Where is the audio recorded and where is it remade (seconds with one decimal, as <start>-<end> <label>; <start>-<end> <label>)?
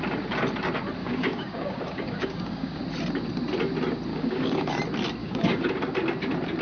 0.0-1.0 recorded; 1.0-2.8 remade; 2.8-4.1 recorded; 4.1-4.7 remade; 4.7-5.2 recorded; 5.2-5.7 remade; 5.7-6.6 recorded